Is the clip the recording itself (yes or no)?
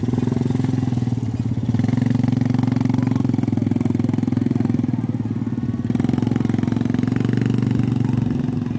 yes